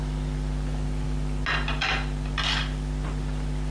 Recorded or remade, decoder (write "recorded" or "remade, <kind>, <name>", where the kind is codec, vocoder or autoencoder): recorded